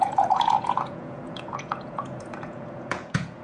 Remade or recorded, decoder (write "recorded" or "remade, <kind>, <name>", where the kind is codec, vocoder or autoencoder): remade, vocoder, Vocos